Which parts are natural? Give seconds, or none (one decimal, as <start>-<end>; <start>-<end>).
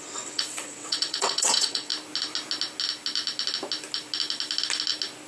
1.9-5.3